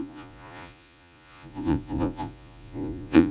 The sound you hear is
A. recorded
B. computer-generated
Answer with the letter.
B